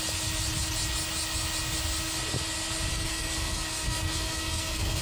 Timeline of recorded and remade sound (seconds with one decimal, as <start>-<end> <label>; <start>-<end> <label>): 0.0-2.9 recorded; 2.9-5.0 remade